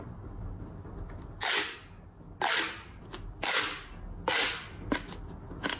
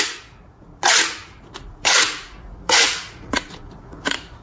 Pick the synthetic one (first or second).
second